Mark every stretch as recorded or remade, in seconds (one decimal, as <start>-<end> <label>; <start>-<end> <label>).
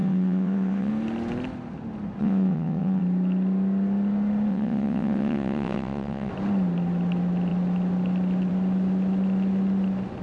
0.0-0.9 remade; 0.9-2.2 recorded; 2.2-3.0 remade; 3.0-4.5 recorded; 4.5-6.3 remade; 6.3-10.2 recorded